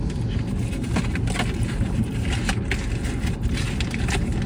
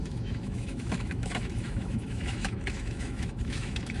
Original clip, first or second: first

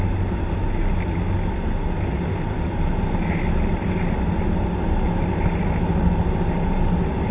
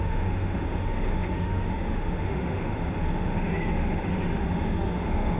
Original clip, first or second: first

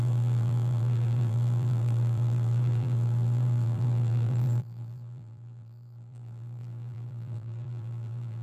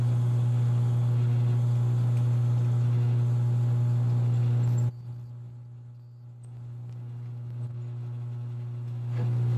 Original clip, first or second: second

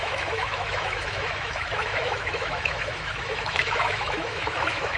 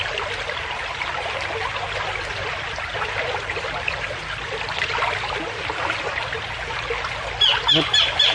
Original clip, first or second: second